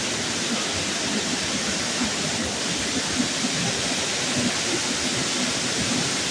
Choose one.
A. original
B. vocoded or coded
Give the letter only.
A